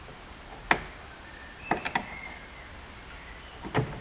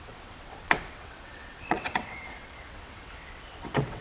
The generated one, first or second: second